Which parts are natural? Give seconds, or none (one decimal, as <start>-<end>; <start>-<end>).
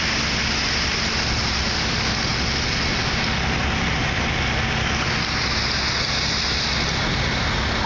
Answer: 0.0-7.9